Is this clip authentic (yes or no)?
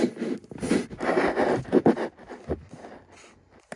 yes